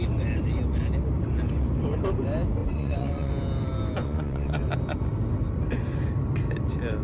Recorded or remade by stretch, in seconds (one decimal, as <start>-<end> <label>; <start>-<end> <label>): 0.0-2.6 recorded; 2.6-3.3 remade; 3.3-4.0 recorded; 4.0-4.6 remade; 4.6-7.0 recorded